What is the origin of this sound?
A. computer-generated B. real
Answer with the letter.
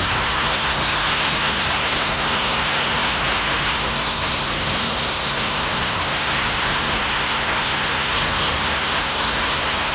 A